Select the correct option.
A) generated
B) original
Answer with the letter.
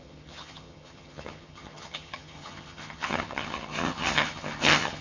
A